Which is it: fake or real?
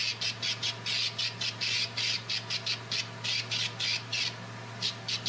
real